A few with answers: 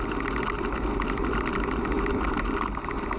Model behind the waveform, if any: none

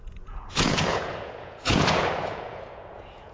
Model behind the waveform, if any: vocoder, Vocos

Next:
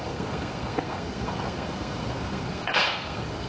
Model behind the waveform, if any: codec, SNAC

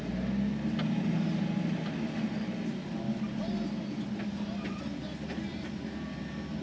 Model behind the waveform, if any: none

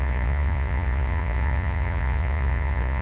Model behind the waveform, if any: vocoder, Vocos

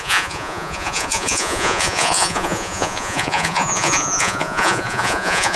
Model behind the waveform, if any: vocoder, Vocos